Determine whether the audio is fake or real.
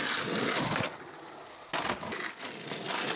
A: real